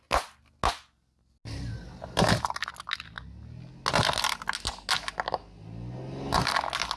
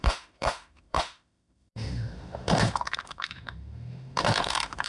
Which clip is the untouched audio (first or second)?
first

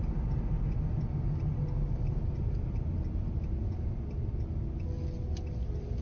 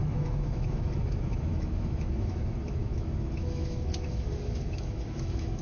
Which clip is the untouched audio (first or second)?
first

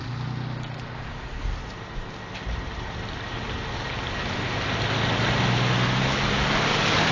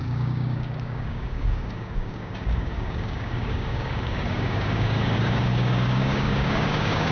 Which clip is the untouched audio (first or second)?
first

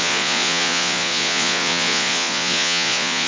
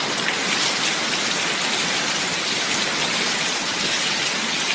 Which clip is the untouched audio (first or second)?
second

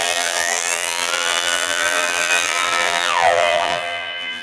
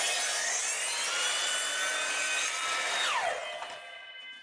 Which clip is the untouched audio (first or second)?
second